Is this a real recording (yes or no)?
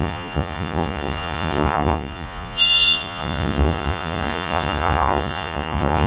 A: no